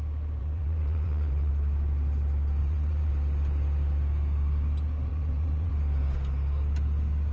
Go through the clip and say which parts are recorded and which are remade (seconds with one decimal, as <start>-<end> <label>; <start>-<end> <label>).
0.0-0.4 recorded; 0.4-1.5 remade; 1.5-2.6 recorded; 2.6-3.1 remade; 3.1-5.1 recorded; 5.1-5.7 remade; 5.7-7.3 recorded